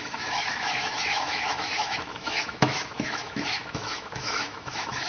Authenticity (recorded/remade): remade